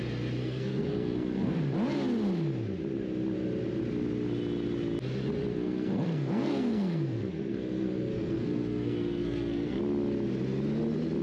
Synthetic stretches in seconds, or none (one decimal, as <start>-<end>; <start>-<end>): 0.4-1.6; 5.5-9.8